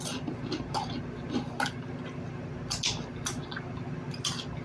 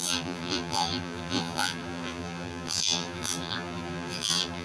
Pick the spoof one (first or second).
second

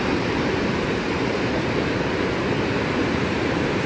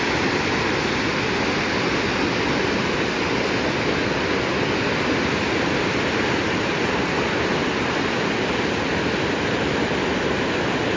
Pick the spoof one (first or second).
first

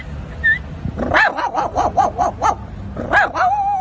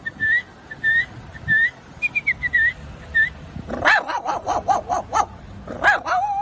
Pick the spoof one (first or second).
second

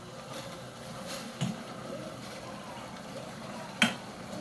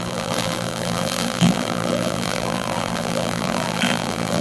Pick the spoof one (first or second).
second